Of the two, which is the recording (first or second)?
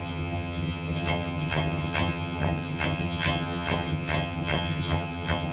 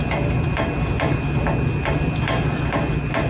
second